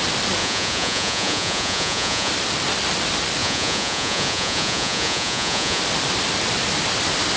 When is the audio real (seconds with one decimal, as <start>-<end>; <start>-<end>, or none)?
0.0-0.4; 2.3-3.4; 5.8-7.4